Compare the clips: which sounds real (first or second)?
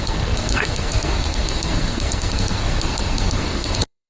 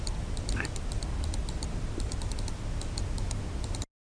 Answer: second